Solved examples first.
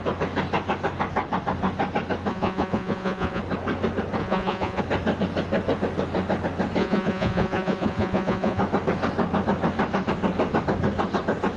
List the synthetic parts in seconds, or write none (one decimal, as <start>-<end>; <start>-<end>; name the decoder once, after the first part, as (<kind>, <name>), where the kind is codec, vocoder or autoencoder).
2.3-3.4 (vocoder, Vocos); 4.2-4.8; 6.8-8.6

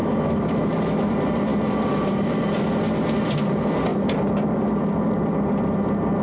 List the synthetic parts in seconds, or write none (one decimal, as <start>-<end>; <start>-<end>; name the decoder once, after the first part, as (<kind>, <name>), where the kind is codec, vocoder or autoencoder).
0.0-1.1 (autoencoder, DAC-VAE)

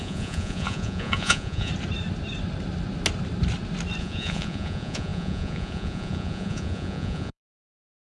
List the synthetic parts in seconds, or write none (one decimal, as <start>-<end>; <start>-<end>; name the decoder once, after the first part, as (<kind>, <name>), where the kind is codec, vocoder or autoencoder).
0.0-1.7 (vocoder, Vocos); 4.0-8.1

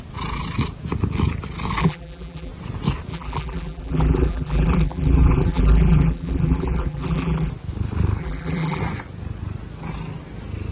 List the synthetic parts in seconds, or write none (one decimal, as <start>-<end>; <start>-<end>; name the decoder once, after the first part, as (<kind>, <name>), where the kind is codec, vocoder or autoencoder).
1.8-2.5 (vocoder, BigVGAN v2); 3.1-7.5; 8.2-8.8